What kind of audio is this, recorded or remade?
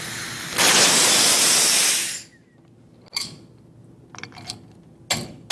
recorded